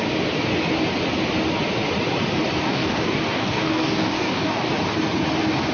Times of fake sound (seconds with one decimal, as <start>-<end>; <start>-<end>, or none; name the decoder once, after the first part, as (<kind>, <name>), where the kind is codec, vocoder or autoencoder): 2.6-4.7 (codec, DAC)